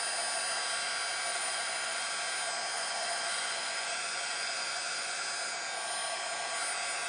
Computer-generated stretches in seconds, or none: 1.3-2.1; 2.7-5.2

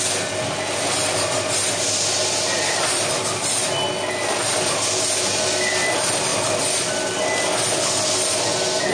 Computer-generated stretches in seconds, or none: none

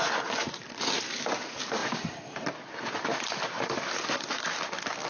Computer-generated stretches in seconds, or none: none

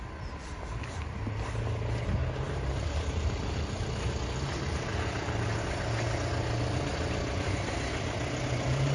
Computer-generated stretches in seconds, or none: 2.2-5.6

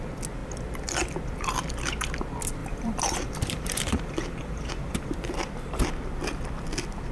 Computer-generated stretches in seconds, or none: 2.6-5.3

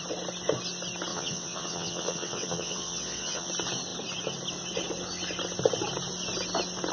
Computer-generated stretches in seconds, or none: 1.1-3.5